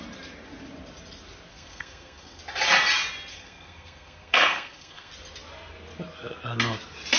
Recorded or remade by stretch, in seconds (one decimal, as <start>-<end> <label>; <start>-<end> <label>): 0.0-1.5 recorded; 1.5-2.4 remade; 2.4-3.3 recorded; 3.3-5.1 remade; 5.1-7.2 recorded